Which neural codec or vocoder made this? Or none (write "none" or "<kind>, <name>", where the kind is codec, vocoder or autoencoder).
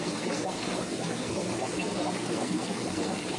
codec, SNAC